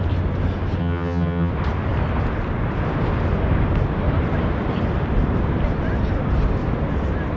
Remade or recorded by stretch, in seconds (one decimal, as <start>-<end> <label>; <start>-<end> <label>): 0.0-0.8 recorded; 0.8-1.5 remade; 1.5-7.4 recorded